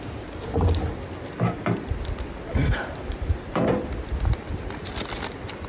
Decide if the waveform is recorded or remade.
recorded